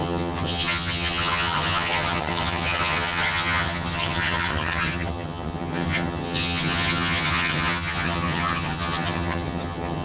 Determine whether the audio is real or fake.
fake